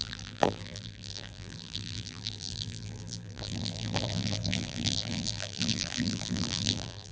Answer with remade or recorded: remade